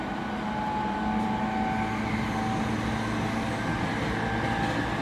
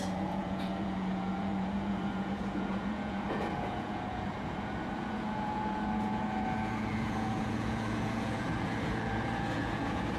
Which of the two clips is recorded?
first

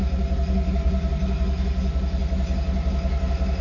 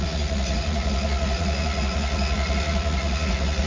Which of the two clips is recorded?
first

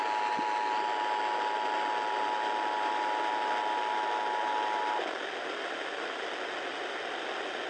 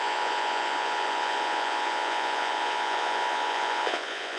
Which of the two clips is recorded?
first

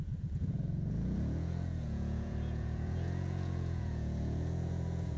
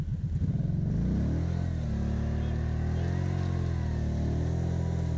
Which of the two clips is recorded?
second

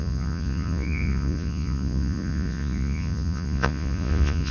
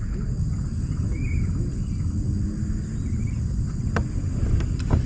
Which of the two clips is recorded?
second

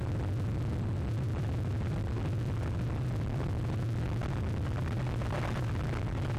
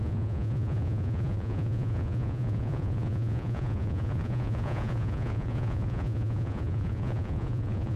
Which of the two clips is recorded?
first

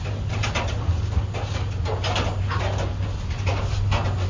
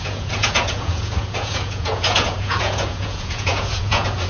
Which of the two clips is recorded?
first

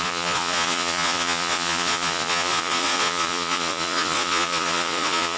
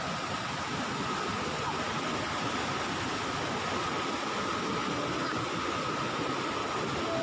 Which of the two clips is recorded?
second